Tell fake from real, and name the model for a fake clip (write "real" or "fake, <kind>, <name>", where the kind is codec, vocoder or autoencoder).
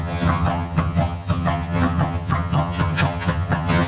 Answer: fake, vocoder, HiFi-GAN